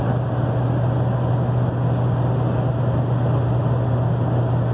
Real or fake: real